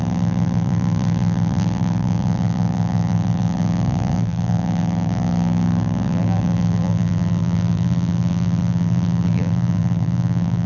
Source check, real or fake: fake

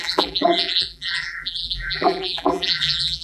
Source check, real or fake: fake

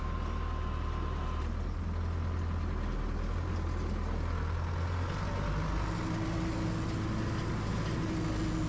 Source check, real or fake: real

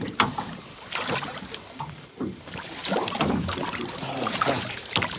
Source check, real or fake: fake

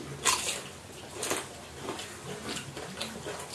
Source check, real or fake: real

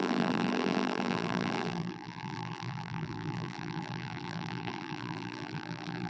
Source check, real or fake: fake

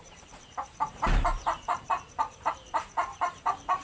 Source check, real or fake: fake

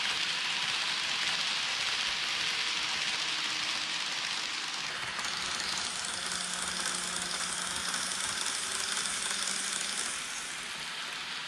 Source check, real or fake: real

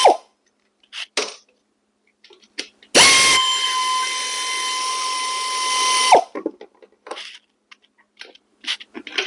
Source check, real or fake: real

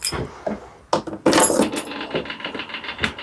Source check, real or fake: real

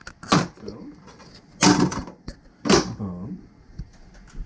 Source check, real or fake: real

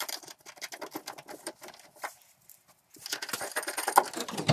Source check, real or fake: real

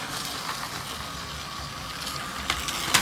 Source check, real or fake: real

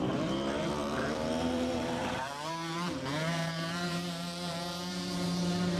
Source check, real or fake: fake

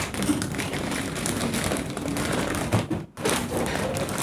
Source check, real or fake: fake